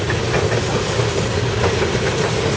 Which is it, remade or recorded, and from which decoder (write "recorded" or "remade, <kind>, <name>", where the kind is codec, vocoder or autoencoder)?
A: recorded